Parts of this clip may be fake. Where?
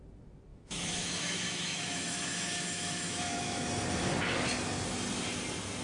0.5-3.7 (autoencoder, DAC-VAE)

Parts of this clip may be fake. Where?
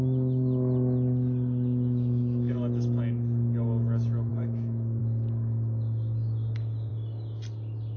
4.3-5.0 (autoencoder, DAC-VAE)